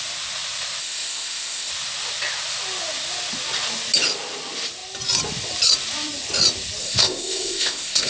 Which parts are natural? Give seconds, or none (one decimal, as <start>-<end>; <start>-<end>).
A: 0.0-0.8; 1.7-6.8